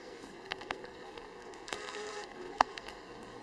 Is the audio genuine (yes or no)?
no